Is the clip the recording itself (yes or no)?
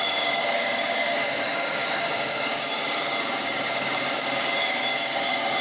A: no